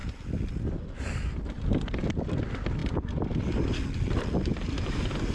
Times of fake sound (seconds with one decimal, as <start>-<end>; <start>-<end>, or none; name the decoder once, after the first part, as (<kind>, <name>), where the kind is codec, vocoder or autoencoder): 0.0-1.0 (vocoder, BigVGAN v2)